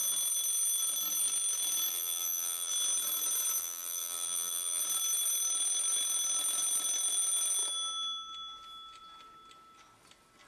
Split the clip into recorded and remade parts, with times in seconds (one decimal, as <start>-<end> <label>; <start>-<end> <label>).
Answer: 0.0-1.9 recorded; 1.9-2.7 remade; 2.7-3.6 recorded; 3.6-4.8 remade; 4.8-10.5 recorded